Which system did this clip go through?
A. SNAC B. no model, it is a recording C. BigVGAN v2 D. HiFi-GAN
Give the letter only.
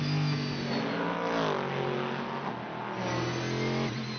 B